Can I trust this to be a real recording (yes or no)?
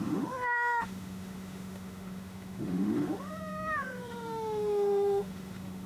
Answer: no